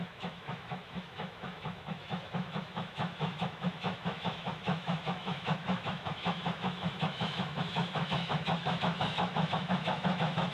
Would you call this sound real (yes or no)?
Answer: no